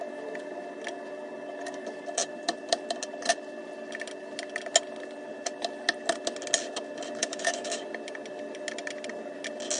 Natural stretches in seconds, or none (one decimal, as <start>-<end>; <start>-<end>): 0.0-7.2; 7.8-9.8